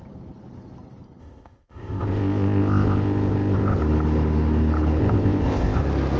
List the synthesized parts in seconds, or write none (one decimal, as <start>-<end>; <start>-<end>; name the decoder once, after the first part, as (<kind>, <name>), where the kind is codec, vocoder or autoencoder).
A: 1.2-3.8 (codec, ZipCodec); 5.0-5.8